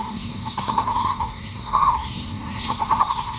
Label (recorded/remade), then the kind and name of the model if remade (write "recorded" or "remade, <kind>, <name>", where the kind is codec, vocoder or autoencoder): remade, codec, SNAC